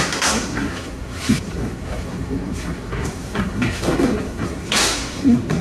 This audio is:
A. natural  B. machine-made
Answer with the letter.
B